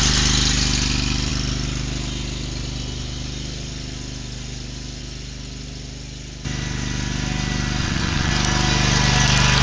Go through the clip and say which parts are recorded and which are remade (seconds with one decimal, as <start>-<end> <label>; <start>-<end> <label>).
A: 0.0-7.8 recorded; 7.8-8.3 remade; 8.3-9.6 recorded